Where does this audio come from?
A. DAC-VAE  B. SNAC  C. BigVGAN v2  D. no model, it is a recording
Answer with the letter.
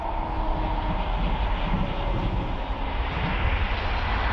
D